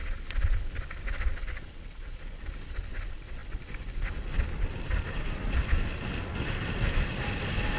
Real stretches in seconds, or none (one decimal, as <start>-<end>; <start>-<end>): 0.0-7.8